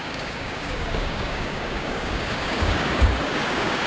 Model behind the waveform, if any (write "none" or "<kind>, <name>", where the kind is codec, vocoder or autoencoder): codec, DAC